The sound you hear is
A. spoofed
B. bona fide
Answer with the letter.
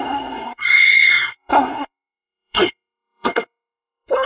A